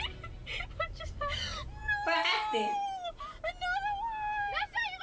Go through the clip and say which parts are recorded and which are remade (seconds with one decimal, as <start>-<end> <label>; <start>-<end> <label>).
0.0-0.4 recorded; 0.4-1.4 remade; 1.4-5.0 recorded